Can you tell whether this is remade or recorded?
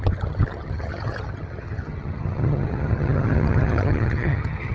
remade